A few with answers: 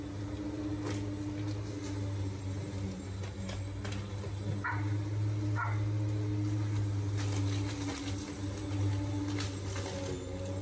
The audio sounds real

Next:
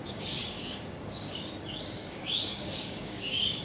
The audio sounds fake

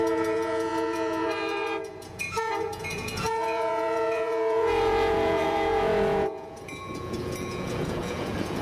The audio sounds fake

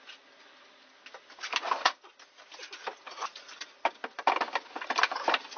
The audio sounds real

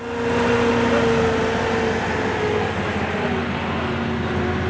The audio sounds real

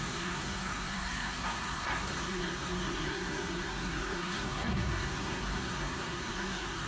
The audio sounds fake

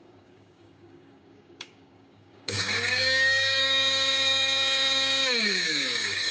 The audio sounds fake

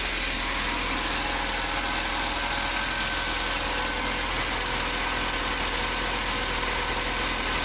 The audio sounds real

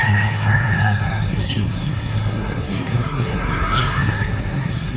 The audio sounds fake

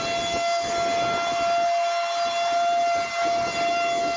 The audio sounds real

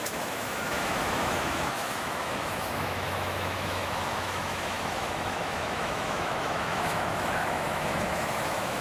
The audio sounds fake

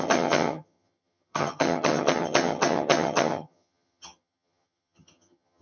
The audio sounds fake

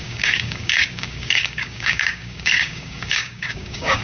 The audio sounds fake